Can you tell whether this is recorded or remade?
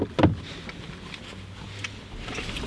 recorded